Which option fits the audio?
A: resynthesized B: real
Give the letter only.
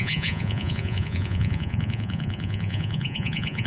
A